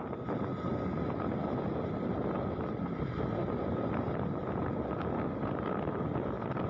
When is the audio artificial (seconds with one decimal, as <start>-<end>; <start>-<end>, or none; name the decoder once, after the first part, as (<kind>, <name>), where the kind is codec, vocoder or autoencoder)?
none